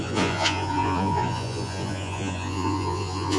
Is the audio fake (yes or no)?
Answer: yes